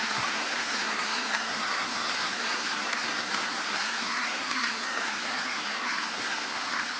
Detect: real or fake fake